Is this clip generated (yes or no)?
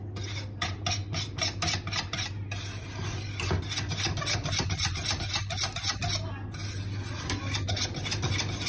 no